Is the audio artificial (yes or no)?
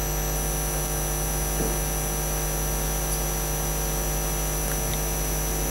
no